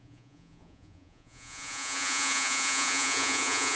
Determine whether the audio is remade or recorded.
remade